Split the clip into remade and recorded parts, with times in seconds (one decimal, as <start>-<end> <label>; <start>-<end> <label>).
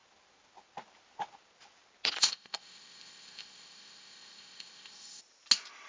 0.0-2.2 recorded; 2.2-5.2 remade; 5.2-5.9 recorded